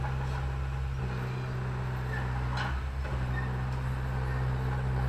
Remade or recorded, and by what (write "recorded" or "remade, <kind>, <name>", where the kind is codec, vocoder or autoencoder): recorded